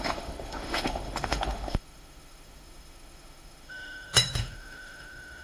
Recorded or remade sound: remade